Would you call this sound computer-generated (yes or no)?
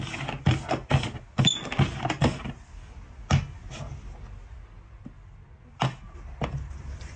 no